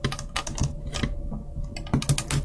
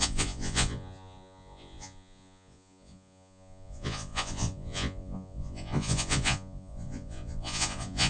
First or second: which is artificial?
second